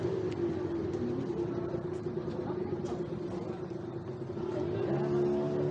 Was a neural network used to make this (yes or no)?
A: no